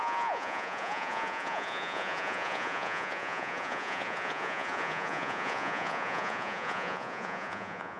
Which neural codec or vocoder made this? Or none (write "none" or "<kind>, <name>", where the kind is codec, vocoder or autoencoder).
vocoder, Vocos